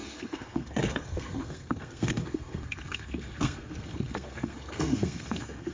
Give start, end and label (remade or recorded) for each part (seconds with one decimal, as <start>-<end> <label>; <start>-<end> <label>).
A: 0.0-5.7 remade